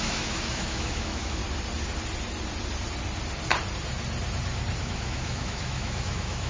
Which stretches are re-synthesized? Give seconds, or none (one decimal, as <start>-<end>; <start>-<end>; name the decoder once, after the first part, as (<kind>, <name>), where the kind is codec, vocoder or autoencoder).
0.0-1.4 (autoencoder, DAC-VAE); 4.8-6.5